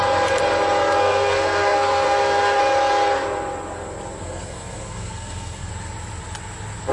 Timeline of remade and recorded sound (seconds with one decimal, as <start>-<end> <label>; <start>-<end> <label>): 0.0-1.0 recorded; 1.0-2.6 remade; 2.6-4.2 recorded; 4.2-5.7 remade; 5.7-6.9 recorded